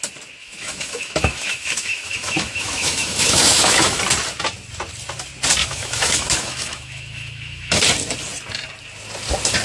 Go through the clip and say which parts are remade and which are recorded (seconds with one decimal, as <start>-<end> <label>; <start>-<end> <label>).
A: 0.0-0.4 recorded; 0.4-4.0 remade; 4.0-5.6 recorded; 5.6-7.8 remade; 7.8-9.6 recorded